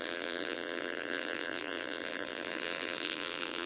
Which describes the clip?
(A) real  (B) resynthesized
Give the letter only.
B